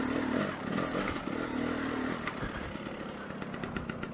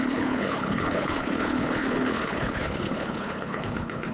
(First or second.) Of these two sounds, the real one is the first